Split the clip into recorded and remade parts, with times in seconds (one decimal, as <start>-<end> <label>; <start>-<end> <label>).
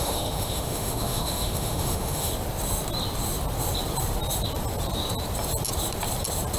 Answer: 0.0-2.3 remade; 2.3-6.6 recorded